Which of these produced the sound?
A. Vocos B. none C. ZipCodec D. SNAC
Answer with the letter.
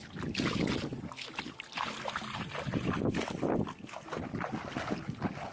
B